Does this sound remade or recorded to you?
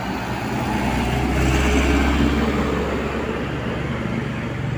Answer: recorded